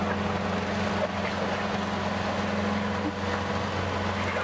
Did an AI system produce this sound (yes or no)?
no